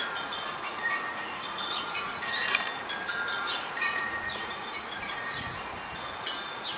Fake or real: fake